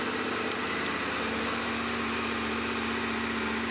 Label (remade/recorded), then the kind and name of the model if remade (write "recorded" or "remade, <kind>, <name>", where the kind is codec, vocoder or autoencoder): recorded